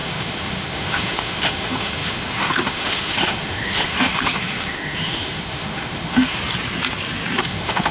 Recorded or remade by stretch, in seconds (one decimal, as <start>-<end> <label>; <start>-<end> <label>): 0.0-6.4 remade; 6.4-7.4 recorded; 7.4-7.9 remade